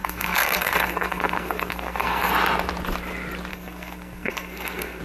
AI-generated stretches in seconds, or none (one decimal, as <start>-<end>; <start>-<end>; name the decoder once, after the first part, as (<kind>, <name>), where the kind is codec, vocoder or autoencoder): 0.0-2.3 (codec, SNAC); 3.5-5.0